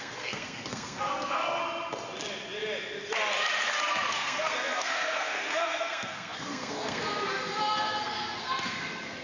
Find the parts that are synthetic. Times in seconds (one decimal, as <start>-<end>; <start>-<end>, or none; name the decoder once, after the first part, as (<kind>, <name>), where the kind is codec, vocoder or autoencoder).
0.0-1.6 (codec, SNAC); 4.1-9.2